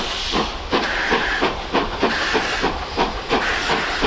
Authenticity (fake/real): real